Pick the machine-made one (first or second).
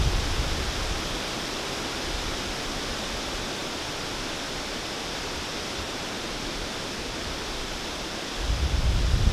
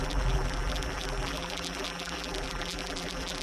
second